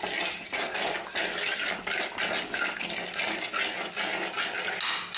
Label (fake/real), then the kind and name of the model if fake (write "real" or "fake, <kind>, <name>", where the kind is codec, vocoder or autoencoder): real